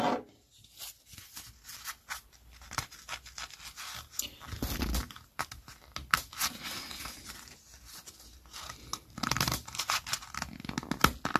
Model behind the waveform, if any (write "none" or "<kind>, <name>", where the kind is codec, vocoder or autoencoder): none